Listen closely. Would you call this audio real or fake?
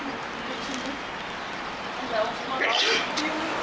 real